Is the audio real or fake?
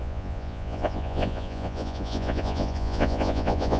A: fake